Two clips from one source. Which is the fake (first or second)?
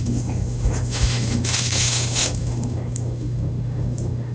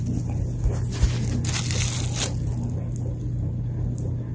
first